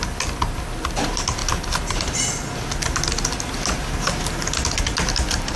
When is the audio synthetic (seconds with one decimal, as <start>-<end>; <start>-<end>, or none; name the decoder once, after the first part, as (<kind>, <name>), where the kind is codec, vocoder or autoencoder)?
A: none